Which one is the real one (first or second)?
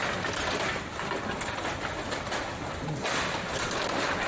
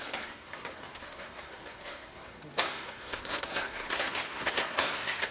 first